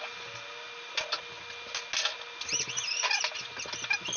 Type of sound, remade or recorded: recorded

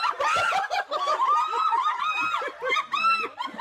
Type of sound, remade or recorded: recorded